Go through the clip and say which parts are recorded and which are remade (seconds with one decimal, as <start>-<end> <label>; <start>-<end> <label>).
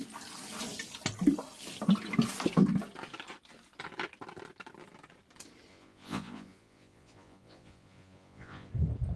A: 0.0-5.7 recorded; 5.7-8.7 remade; 8.7-9.2 recorded